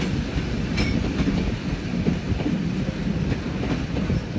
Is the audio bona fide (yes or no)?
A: yes